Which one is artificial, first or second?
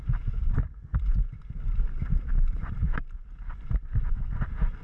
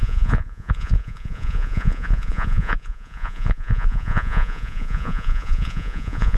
second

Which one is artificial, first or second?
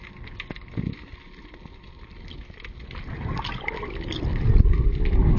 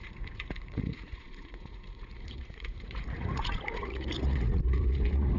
second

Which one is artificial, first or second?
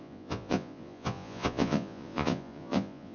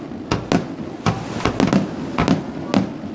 first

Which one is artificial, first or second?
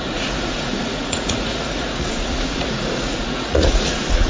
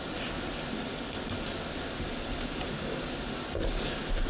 first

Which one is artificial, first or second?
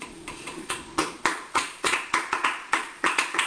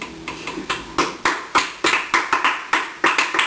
first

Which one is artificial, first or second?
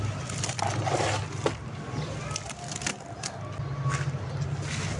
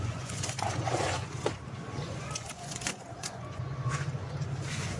second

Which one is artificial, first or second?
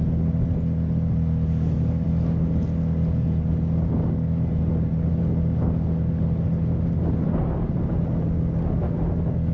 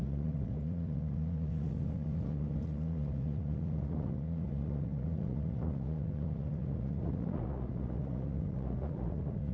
second